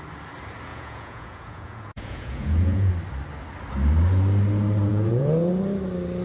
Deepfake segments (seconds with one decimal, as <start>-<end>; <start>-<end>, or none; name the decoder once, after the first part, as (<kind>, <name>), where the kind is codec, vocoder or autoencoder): 0.7-2.9 (vocoder, Vocos); 4.9-5.5